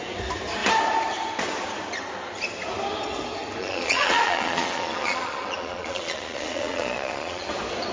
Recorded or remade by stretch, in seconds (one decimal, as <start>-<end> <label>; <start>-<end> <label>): 0.0-3.6 recorded; 3.6-7.5 remade; 7.5-7.9 recorded